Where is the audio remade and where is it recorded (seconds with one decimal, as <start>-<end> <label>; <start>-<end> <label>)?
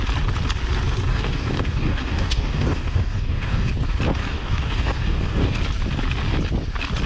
0.0-1.1 recorded; 1.1-3.7 remade; 3.7-4.2 recorded; 4.2-5.6 remade; 5.6-7.1 recorded